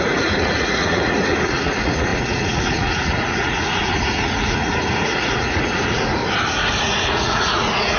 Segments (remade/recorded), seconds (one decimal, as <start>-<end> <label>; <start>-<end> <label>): 0.0-6.2 remade; 6.2-6.8 recorded; 6.8-8.0 remade